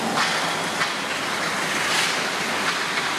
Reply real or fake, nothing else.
real